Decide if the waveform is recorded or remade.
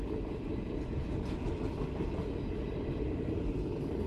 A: recorded